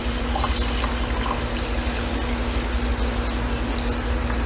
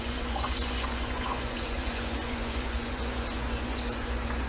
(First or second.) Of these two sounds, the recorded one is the first